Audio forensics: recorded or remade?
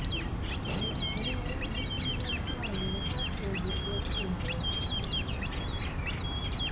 recorded